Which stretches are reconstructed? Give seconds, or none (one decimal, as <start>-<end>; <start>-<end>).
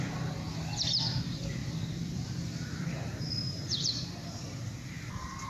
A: 1.6-4.9